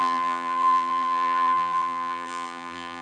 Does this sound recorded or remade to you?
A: remade